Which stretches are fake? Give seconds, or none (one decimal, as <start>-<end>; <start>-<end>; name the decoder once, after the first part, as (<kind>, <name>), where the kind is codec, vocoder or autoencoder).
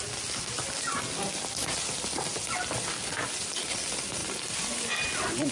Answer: none